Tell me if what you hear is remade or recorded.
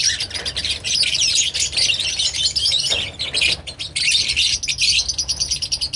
recorded